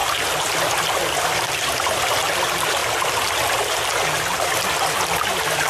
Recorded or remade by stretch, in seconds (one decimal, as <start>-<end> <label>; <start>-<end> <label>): 0.0-5.7 recorded